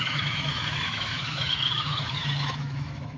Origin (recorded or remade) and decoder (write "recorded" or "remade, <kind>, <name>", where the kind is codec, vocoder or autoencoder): remade, autoencoder, DAC-VAE